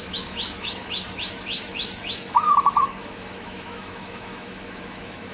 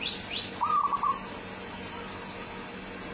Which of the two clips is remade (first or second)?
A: first